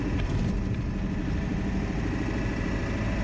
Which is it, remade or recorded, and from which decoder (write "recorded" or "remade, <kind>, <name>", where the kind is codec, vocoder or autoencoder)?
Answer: recorded